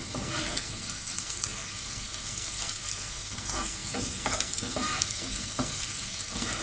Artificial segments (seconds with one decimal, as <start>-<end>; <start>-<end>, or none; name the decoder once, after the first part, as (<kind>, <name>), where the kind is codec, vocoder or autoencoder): 0.0-6.6 (codec, SNAC)